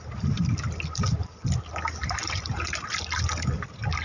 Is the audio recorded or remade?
recorded